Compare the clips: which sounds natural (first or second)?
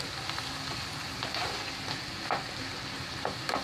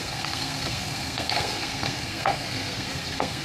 first